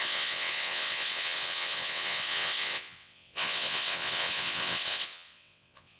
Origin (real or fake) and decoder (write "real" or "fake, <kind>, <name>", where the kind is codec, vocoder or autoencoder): fake, vocoder, WaveNeXt